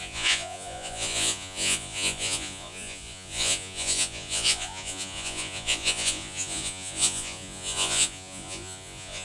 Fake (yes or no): yes